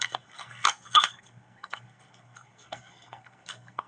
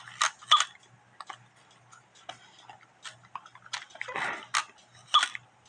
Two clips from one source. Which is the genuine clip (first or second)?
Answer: second